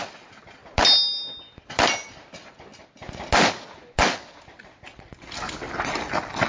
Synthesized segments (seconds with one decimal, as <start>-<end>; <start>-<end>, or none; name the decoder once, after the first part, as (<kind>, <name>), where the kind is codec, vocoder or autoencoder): none